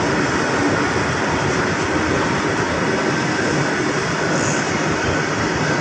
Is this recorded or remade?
recorded